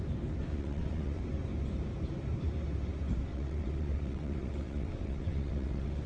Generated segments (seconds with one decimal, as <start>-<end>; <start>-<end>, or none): 0.5-1.2; 3.3-6.1